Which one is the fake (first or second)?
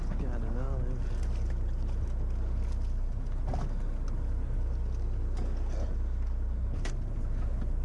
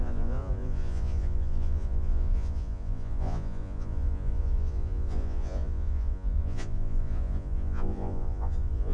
second